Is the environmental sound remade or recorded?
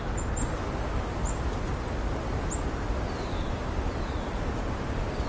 recorded